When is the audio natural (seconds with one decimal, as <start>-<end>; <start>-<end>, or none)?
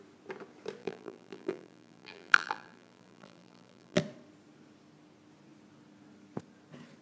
0.0-0.8; 4.0-7.0